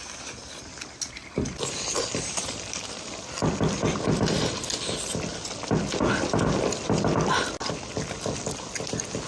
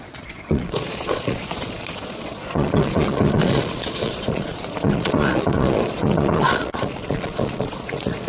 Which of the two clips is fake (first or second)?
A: second